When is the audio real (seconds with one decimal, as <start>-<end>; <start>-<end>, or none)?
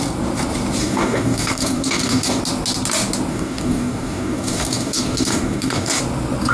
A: 0.0-0.8; 2.4-3.3; 6.0-6.5